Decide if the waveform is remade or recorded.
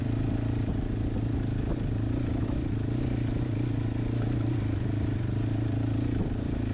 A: recorded